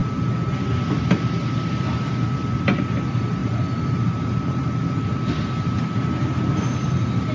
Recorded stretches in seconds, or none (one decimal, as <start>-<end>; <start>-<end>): 0.0-3.4